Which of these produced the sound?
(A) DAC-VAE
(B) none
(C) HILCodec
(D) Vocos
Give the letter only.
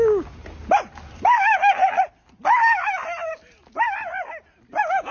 B